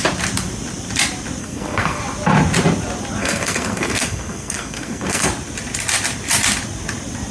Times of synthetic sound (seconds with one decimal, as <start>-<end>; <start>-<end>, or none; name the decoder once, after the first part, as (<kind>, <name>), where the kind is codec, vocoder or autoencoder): 1.4-2.0 (codec, SNAC); 3.2-5.3